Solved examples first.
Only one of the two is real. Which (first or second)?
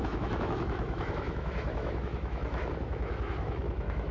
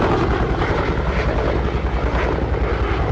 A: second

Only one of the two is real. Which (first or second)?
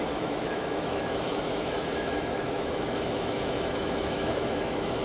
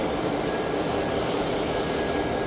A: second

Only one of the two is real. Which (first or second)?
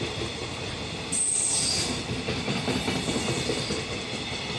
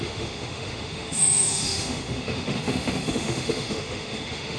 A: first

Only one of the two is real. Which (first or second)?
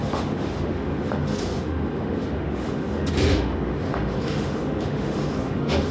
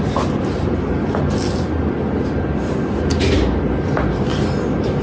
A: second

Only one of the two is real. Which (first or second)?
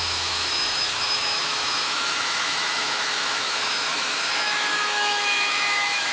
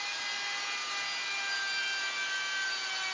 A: second